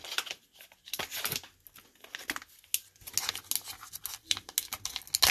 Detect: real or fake real